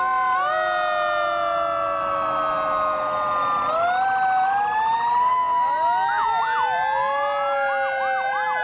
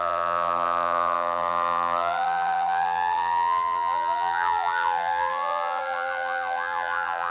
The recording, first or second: first